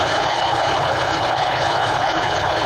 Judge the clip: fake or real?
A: fake